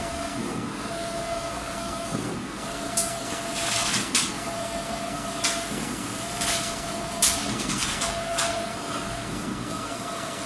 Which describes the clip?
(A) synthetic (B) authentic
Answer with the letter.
A